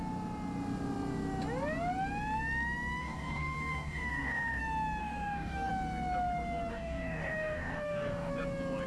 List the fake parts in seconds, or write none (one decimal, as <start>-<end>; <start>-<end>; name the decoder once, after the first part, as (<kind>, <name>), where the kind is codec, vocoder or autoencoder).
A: 3.0-4.6 (codec, DAC); 5.0-5.7; 6.7-8.3